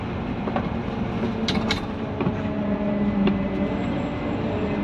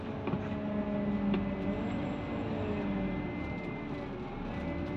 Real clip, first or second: second